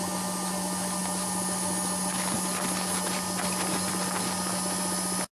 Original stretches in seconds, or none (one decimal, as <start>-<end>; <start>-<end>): 0.0-5.4